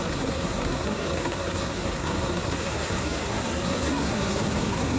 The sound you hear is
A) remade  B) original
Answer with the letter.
A